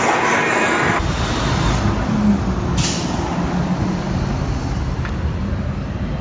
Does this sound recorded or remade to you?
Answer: recorded